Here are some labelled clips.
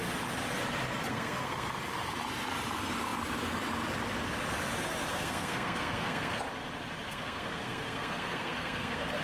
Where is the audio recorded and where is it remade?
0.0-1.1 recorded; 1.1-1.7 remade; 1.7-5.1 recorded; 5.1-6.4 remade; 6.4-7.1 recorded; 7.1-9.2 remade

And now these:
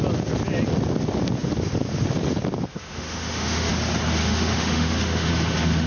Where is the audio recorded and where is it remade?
0.0-2.7 recorded; 2.7-3.7 remade; 3.7-4.2 recorded; 4.2-5.3 remade; 5.3-5.9 recorded

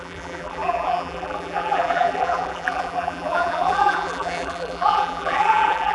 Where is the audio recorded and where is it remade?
0.0-5.9 remade

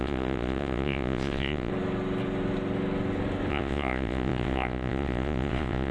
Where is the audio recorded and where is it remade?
0.0-1.7 remade; 1.7-3.5 recorded; 3.5-5.9 remade

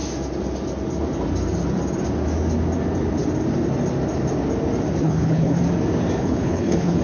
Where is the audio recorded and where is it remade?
0.0-5.0 recorded; 5.0-5.6 remade; 5.6-6.2 recorded; 6.2-7.0 remade

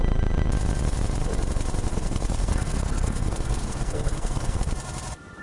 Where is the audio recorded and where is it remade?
0.0-1.9 recorded; 1.9-4.7 remade; 4.7-5.4 recorded

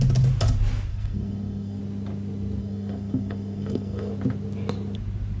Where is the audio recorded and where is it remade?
0.0-0.9 recorded; 0.9-1.8 remade; 1.8-2.6 recorded; 2.6-4.1 remade; 4.1-5.4 recorded